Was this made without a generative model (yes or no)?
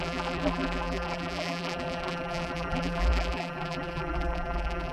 no